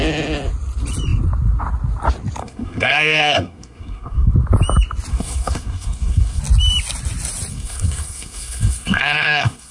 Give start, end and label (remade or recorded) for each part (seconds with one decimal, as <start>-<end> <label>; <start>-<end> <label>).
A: 0.0-2.4 recorded; 2.4-4.3 remade; 4.3-5.1 recorded; 5.1-6.4 remade; 6.4-7.5 recorded; 7.5-9.7 remade